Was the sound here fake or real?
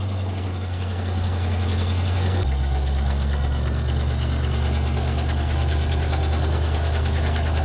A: fake